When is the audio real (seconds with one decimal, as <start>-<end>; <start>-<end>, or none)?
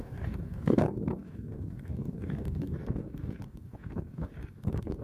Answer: none